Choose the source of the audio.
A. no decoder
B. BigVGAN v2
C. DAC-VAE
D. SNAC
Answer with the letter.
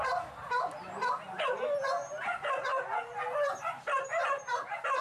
A